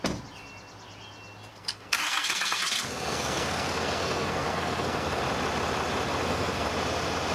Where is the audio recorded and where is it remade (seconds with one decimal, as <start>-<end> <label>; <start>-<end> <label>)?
0.0-1.5 recorded; 1.5-5.2 remade; 5.2-6.2 recorded; 6.2-6.7 remade; 6.7-7.3 recorded